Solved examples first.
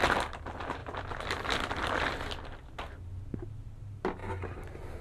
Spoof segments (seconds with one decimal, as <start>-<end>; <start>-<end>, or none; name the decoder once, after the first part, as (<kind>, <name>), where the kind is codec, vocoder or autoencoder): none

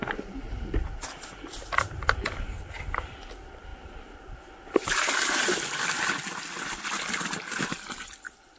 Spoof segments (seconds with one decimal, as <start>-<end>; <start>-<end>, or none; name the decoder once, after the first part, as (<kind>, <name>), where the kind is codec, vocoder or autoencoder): 0.0-3.7 (vocoder, BigVGAN v2); 4.7-8.6

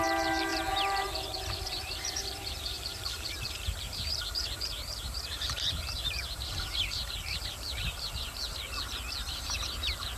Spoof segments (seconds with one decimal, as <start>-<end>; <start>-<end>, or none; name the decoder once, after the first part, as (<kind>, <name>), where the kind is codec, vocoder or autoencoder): 0.0-8.4 (vocoder, BigVGAN v2); 9.3-10.2

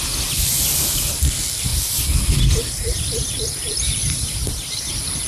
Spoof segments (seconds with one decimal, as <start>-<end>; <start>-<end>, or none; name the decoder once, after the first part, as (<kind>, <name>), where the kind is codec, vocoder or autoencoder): 1.7-4.7 (vocoder, BigVGAN v2)

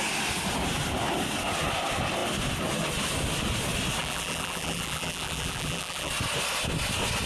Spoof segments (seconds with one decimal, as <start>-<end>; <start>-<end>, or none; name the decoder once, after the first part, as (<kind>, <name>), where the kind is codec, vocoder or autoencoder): 4.0-6.1 (vocoder, BigVGAN v2)

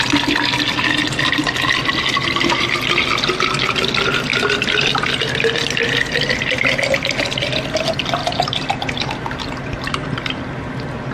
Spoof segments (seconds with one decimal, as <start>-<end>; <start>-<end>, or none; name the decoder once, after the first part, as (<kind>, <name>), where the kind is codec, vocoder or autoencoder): 8.2-10.4 (vocoder, BigVGAN v2)

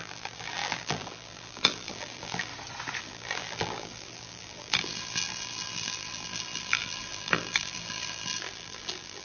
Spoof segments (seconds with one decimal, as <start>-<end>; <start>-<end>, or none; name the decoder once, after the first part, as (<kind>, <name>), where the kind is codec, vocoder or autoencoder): 0.0-2.5 (vocoder, BigVGAN v2); 3.0-9.2

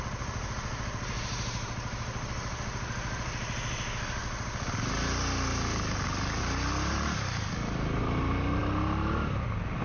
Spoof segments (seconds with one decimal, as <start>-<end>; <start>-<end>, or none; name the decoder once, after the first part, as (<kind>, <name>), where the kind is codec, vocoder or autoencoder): none